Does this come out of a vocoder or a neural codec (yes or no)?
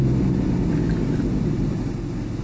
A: no